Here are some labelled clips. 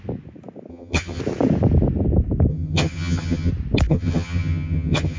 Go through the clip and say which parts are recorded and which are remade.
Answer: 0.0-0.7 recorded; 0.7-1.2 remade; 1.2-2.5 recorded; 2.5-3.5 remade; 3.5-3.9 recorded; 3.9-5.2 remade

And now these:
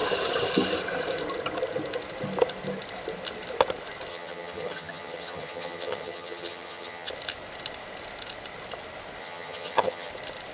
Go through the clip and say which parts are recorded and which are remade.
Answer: 0.0-4.1 recorded; 4.1-7.1 remade; 7.1-9.2 recorded; 9.2-10.1 remade; 10.1-10.5 recorded

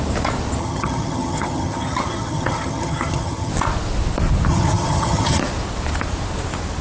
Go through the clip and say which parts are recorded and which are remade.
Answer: 0.0-0.6 recorded; 0.6-3.5 remade; 3.5-4.5 recorded; 4.5-5.4 remade; 5.4-6.8 recorded

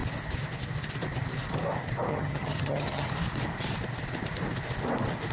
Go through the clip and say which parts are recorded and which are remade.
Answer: 0.0-2.1 recorded; 2.1-3.1 remade; 3.1-5.3 recorded

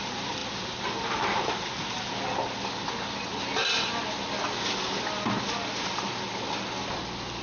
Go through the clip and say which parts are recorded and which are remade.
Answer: 0.0-7.4 recorded

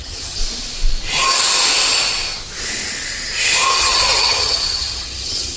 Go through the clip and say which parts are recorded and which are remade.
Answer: 0.0-0.4 remade; 0.4-3.8 recorded; 3.8-5.6 remade

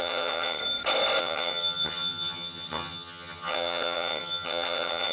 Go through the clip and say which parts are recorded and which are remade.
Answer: 0.0-0.6 remade; 0.6-1.2 recorded; 1.2-5.1 remade

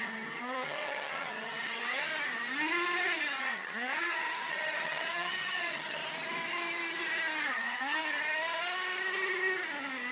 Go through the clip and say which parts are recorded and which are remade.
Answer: 0.0-2.1 remade; 2.1-3.4 recorded; 3.4-6.0 remade; 6.0-7.5 recorded; 7.5-8.0 remade; 8.0-10.1 recorded